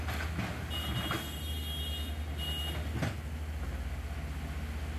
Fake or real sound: real